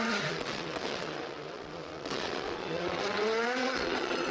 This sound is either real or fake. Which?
fake